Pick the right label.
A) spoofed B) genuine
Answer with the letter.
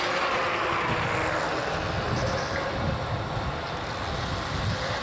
B